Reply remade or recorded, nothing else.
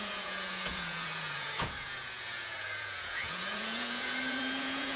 remade